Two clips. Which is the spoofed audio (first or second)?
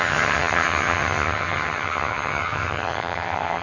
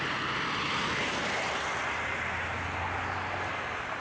first